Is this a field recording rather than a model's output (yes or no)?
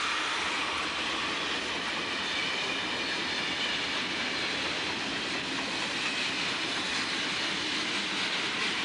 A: yes